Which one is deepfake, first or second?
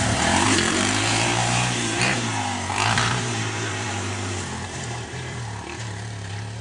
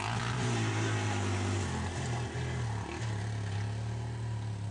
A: first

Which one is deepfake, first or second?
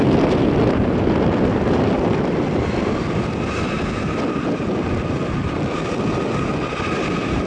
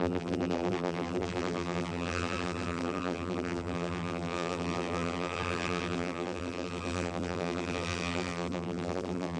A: second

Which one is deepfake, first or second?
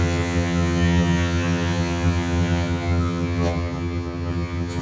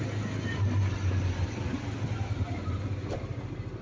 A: first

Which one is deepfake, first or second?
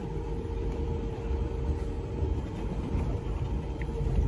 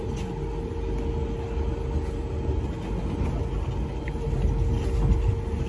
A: first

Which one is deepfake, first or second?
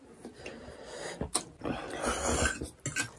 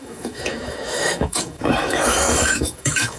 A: second